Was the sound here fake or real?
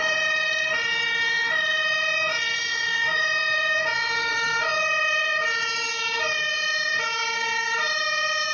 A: fake